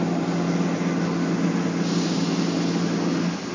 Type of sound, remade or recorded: recorded